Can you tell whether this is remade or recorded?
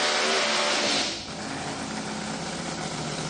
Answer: recorded